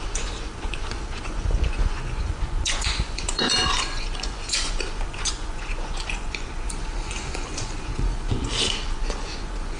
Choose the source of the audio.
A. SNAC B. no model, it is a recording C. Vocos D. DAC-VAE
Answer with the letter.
C